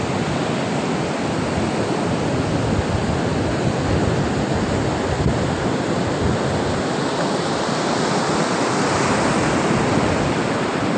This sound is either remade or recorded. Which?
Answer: recorded